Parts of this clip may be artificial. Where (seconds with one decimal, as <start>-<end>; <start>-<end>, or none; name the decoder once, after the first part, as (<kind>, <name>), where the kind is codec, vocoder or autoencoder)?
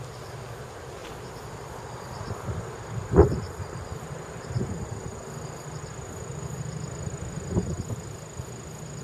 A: 1.0-1.8 (vocoder, BigVGAN v2); 3.6-4.6